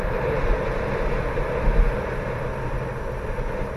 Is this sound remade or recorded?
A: recorded